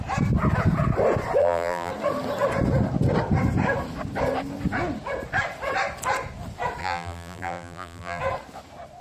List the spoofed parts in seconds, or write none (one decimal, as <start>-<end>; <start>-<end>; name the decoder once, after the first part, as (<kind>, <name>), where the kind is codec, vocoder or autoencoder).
1.4-1.9 (vocoder, BigVGAN v2); 6.8-8.2